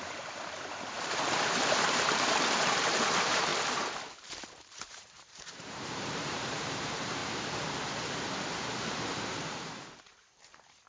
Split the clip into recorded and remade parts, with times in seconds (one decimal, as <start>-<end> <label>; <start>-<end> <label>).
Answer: 0.0-3.5 remade; 3.5-4.5 recorded; 4.5-7.2 remade; 7.2-9.5 recorded; 9.5-10.9 remade